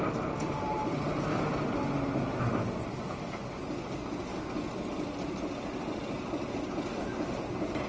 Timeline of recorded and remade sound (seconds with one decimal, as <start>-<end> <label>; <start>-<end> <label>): 0.0-7.9 recorded